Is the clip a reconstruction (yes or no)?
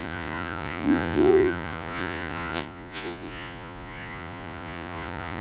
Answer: yes